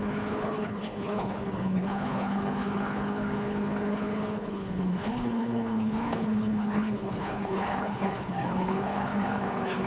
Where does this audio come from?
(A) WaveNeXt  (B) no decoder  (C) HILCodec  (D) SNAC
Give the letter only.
C